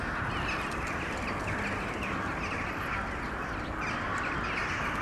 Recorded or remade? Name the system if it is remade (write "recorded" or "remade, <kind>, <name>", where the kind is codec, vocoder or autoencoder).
recorded